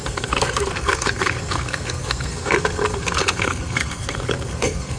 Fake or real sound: fake